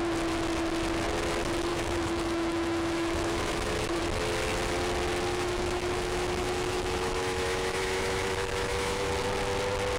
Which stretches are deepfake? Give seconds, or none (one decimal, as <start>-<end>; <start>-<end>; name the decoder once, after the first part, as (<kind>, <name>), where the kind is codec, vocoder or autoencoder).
1.7-4.0 (autoencoder, DAC-VAE); 5.3-9.1